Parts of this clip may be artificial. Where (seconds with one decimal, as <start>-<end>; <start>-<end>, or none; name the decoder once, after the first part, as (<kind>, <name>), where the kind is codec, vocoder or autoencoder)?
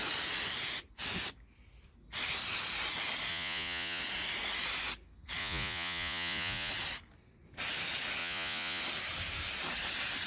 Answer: 3.3-4.0 (vocoder, Vocos); 5.4-6.7; 8.2-8.8